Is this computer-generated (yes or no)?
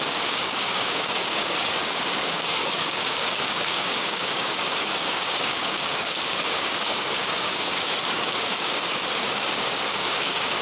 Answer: yes